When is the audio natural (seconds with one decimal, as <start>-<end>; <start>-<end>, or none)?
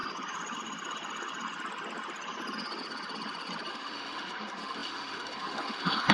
0.0-3.7